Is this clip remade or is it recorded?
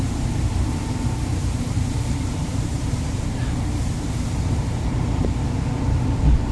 remade